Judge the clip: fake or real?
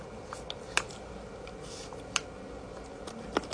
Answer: real